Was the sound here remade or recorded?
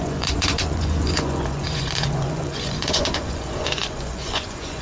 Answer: remade